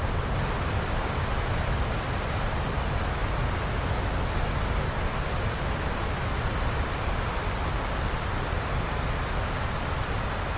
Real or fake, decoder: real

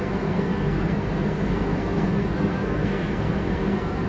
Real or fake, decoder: fake, codec, SNAC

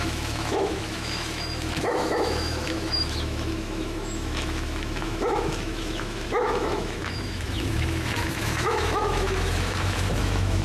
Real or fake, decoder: fake, autoencoder, DAC-VAE